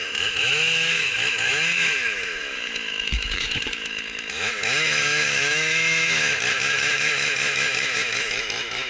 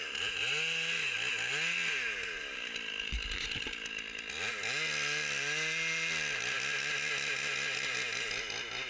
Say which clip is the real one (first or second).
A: second